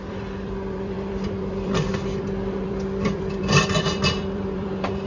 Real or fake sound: fake